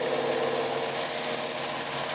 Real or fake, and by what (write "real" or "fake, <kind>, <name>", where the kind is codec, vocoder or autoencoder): real